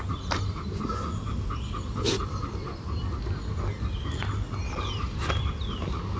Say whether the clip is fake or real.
real